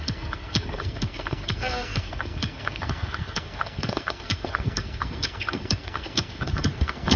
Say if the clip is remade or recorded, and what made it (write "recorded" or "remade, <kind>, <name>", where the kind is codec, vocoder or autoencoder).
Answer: remade, codec, SNAC